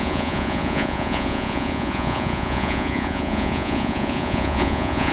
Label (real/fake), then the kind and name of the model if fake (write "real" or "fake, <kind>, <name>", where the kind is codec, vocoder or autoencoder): fake, vocoder, Vocos